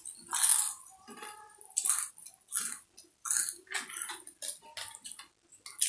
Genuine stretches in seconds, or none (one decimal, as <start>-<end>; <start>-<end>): 0.0-0.5; 2.1-5.9

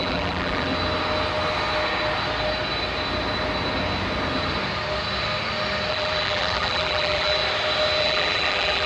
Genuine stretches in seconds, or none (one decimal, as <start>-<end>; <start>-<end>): 0.7-5.9; 7.4-8.0

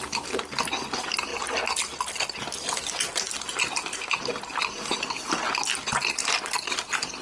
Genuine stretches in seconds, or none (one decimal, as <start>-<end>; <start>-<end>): 0.0-7.2

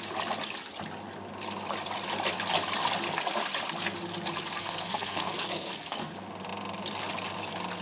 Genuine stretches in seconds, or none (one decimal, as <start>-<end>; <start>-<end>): 0.0-4.6; 6.1-7.8

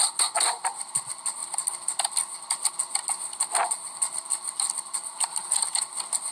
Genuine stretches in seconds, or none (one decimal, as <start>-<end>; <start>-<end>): 0.0-6.3

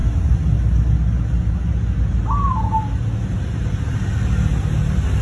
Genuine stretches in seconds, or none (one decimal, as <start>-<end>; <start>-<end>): 0.0-5.2

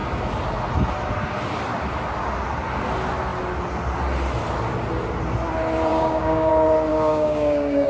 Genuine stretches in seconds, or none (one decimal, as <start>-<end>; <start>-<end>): 0.0-5.9; 6.5-6.9

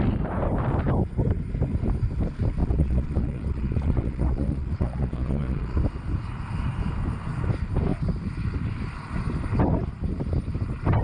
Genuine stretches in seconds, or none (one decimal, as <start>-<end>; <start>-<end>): 0.0-2.6; 5.8-11.0